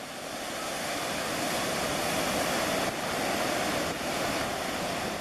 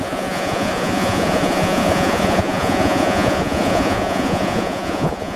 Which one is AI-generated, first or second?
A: second